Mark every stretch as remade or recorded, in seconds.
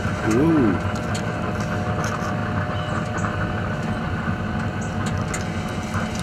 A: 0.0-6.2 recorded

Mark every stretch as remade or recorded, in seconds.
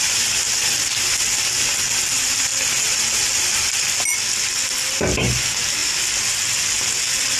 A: 0.0-7.4 recorded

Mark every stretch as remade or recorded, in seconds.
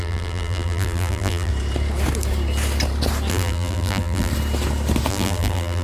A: 0.0-1.5 remade; 1.5-3.3 recorded; 3.3-4.3 remade; 4.3-5.1 recorded; 5.1-5.8 remade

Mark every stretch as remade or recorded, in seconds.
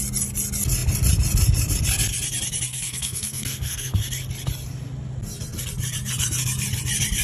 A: 0.0-2.7 recorded; 2.7-3.9 remade; 3.9-7.2 recorded